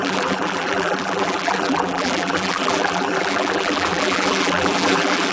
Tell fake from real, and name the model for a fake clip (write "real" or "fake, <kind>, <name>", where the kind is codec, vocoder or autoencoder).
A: fake, vocoder, BigVGAN v2